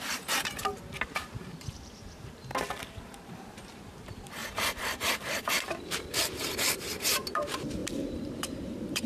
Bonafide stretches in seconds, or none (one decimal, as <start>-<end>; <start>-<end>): 0.6-1.4; 2.5-3.0